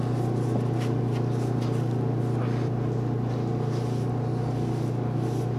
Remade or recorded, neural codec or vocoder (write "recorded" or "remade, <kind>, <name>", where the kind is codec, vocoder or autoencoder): recorded